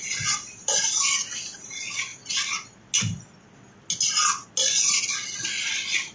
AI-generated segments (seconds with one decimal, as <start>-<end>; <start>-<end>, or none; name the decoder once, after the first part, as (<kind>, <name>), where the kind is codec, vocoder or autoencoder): none